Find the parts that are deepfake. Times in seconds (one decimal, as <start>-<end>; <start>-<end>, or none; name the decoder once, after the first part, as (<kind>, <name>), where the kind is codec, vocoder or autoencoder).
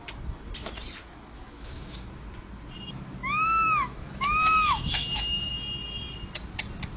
1.0-2.1 (autoencoder, DAC-VAE); 3.2-5.5